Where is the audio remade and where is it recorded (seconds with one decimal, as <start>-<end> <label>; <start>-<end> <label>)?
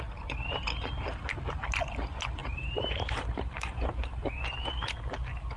0.0-2.4 recorded; 2.4-4.3 remade; 4.3-5.6 recorded